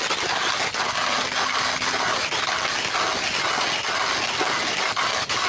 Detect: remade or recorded recorded